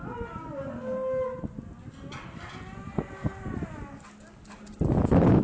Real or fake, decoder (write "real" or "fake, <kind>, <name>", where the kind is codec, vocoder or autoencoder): real